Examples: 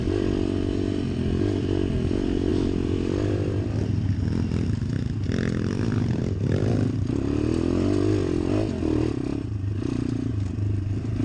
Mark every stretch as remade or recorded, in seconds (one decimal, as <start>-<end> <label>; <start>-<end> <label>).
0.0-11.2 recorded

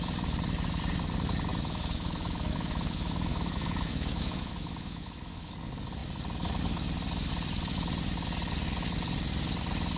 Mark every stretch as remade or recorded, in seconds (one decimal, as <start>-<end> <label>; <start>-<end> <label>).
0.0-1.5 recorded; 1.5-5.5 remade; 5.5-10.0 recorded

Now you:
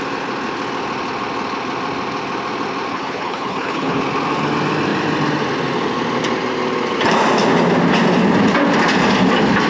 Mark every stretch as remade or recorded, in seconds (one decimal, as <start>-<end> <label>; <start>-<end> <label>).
0.0-2.9 recorded; 2.9-4.0 remade; 4.0-9.7 recorded

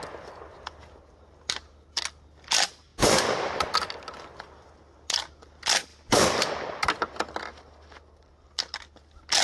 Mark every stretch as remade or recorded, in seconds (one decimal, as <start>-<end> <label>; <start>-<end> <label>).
0.0-9.4 recorded

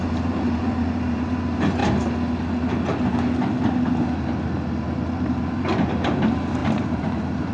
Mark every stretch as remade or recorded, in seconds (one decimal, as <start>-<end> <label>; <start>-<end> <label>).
0.0-1.8 remade; 1.8-5.3 recorded; 5.3-7.5 remade